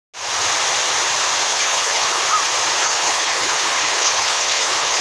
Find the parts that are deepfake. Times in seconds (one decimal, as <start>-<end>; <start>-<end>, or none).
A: 1.5-2.2; 2.8-5.0